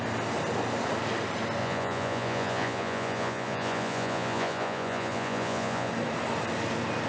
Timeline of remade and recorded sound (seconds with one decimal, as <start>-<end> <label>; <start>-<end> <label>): 0.0-1.6 recorded; 1.6-5.9 remade; 5.9-7.1 recorded